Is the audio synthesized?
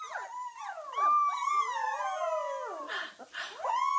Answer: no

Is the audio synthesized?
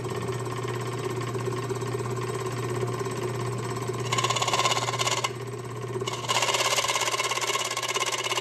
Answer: no